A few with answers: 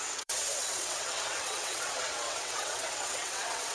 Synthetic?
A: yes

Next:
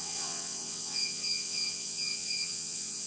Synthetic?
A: yes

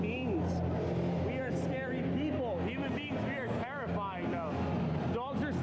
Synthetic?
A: no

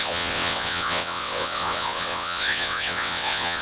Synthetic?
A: yes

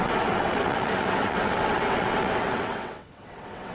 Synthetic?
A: yes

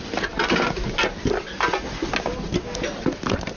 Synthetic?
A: no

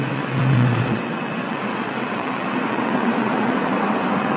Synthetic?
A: yes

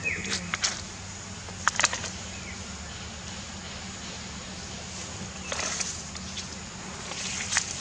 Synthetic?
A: no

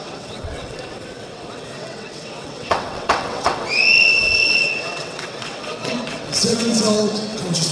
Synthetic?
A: yes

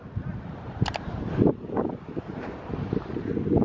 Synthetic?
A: no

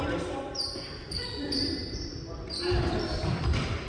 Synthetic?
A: no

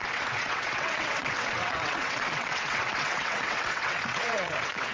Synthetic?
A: yes